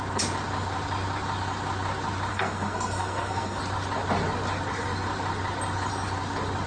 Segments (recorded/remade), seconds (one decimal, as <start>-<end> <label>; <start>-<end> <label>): 0.0-2.3 recorded; 2.3-3.6 remade; 3.6-6.7 recorded